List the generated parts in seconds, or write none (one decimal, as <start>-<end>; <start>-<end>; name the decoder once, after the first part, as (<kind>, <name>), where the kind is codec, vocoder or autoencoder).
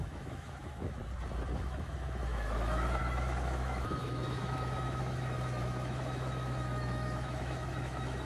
0.0-1.0 (autoencoder, DAC-VAE); 1.6-8.3